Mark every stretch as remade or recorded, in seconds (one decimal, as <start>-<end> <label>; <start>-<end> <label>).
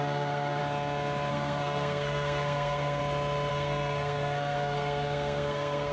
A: 0.0-0.6 remade; 0.6-1.3 recorded; 1.3-3.0 remade; 3.0-3.5 recorded; 3.5-5.9 remade